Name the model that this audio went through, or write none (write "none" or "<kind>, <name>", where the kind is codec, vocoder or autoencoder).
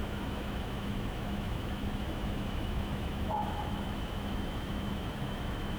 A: autoencoder, DAC-VAE